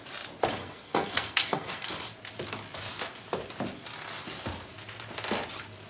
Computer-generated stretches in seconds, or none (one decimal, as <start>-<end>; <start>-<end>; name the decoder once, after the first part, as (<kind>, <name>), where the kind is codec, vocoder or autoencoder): 0.6-1.9 (codec, SNAC)